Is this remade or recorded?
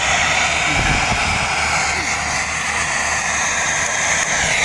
recorded